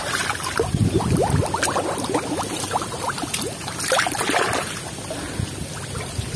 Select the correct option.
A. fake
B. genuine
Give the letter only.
B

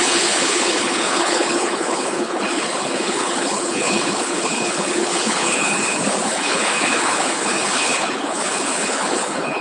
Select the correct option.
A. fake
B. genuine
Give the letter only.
A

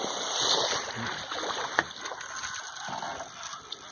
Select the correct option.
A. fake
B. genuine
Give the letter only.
B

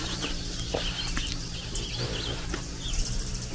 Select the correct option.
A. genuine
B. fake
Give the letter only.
A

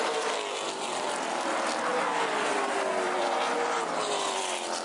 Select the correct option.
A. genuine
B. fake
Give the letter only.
A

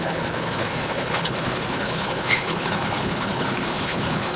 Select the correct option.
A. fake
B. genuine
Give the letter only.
A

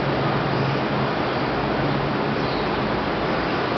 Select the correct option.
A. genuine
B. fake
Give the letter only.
A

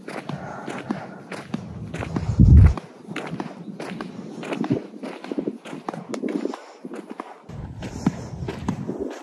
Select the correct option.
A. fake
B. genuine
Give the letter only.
B